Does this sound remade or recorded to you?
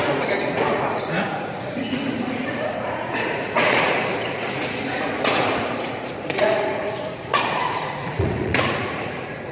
remade